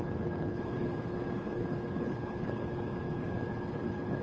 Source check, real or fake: fake